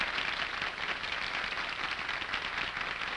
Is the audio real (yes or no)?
yes